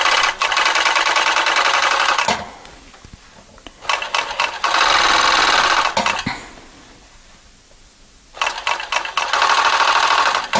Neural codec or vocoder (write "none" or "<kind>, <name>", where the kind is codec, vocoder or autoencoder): none